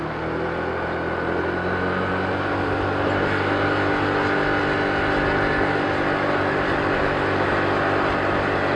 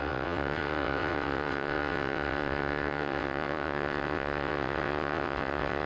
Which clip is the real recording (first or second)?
first